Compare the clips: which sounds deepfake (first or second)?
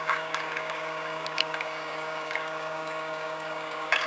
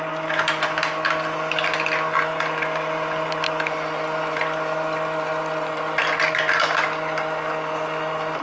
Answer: first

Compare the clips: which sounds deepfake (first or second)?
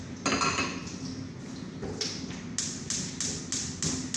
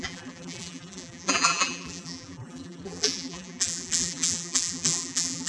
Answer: second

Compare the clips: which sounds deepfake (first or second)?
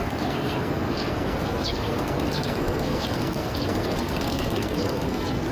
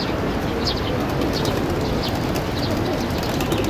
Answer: first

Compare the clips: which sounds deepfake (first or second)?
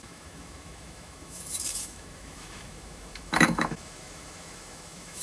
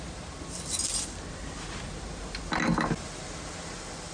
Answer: first